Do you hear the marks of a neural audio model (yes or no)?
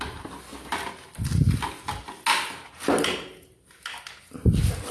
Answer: no